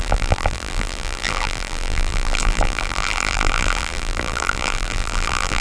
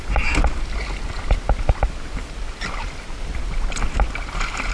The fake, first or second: first